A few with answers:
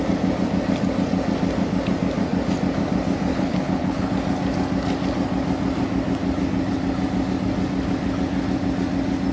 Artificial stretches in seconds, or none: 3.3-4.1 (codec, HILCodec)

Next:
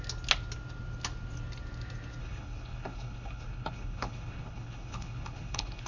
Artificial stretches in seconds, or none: 2.2-5.9 (codec, HILCodec)

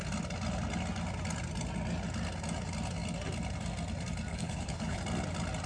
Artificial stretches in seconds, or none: 4.3-5.0 (codec, HILCodec)